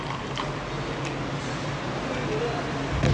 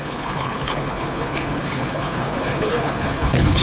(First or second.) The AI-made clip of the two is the second